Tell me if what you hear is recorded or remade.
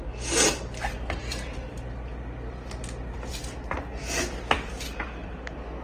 recorded